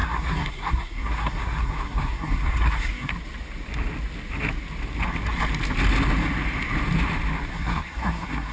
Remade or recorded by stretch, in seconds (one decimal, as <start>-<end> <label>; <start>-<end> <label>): 0.0-3.1 remade; 3.1-7.5 recorded; 7.5-8.5 remade